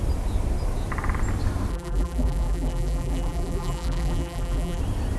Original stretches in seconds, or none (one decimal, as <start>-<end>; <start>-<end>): 0.0-1.7; 4.8-5.2